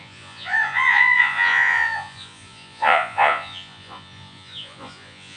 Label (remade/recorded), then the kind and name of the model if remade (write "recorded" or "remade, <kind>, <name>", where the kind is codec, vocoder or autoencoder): remade, vocoder, Vocos